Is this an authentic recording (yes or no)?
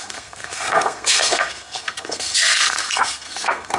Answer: no